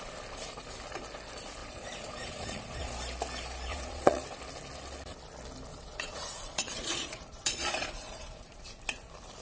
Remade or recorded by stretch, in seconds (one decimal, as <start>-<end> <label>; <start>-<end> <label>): 0.0-1.6 recorded; 1.6-2.9 remade; 2.9-3.7 recorded; 3.7-4.2 remade; 4.2-5.7 recorded; 5.7-8.6 remade; 8.6-9.4 recorded